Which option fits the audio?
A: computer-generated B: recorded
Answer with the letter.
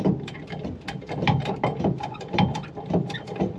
A